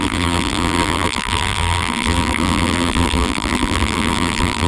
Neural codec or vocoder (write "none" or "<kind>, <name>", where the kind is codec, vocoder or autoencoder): vocoder, BigVGAN v2